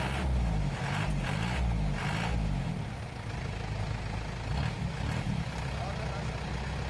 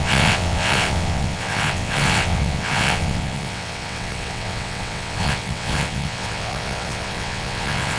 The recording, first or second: first